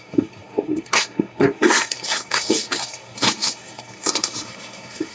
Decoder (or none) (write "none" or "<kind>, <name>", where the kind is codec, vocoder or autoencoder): codec, SNAC